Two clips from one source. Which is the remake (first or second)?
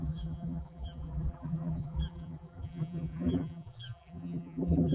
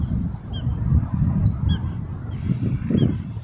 first